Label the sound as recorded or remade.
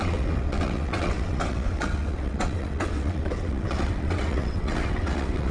remade